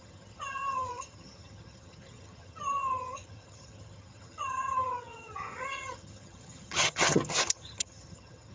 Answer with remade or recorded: remade